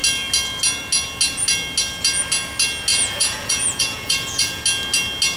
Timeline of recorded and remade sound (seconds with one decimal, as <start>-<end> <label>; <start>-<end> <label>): 0.0-2.9 recorded; 2.9-4.6 remade; 4.6-5.4 recorded